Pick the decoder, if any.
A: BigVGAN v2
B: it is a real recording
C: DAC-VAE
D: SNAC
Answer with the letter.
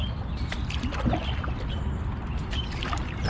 B